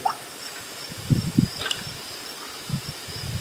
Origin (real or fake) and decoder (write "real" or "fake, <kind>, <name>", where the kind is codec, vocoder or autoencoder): real